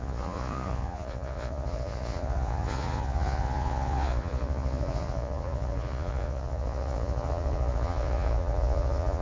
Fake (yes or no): yes